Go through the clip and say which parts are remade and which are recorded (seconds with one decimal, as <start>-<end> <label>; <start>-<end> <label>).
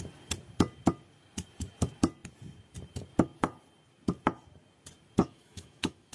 0.0-5.2 recorded; 5.2-6.1 remade